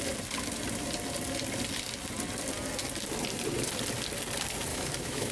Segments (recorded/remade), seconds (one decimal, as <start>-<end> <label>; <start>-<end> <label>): 0.0-4.7 recorded; 4.7-5.3 remade